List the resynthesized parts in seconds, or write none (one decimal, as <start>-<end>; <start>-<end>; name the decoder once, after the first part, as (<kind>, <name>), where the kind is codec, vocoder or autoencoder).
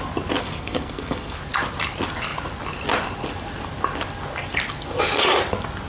0.4-1.4 (codec, SNAC)